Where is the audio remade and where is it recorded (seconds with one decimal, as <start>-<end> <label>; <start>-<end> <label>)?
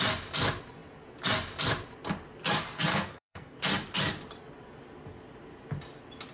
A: 0.0-2.9 recorded; 2.9-3.6 remade; 3.6-6.3 recorded